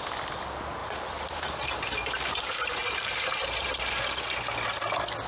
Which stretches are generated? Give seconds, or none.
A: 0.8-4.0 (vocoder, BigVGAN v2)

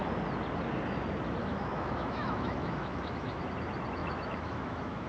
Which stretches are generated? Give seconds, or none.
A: 1.4-3.4 (autoencoder, DAC-VAE); 4.0-5.1

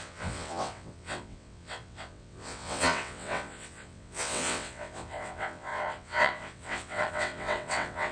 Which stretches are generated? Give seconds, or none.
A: 0.0-8.1 (vocoder, WaveNeXt)

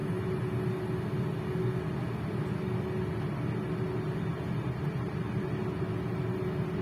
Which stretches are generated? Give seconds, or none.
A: none